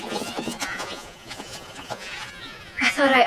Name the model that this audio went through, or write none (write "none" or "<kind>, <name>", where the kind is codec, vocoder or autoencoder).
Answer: vocoder, Vocos